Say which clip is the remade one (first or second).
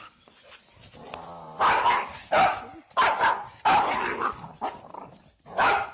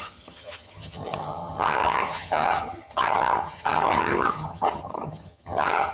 second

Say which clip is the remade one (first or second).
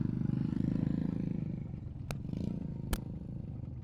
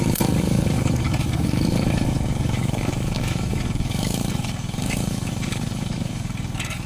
second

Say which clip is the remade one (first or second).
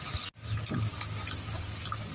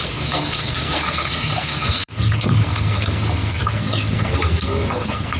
second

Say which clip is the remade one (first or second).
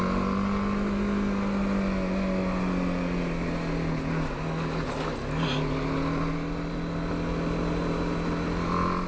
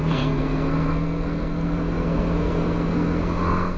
second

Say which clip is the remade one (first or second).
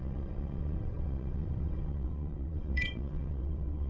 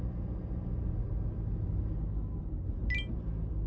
first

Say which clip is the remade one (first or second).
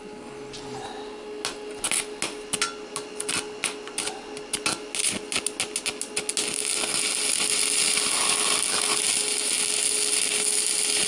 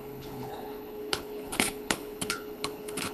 second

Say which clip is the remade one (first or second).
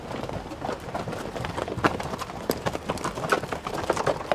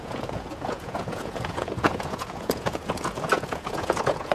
second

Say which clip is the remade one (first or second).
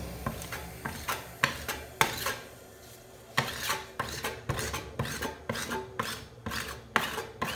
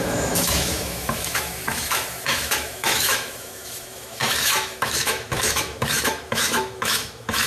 second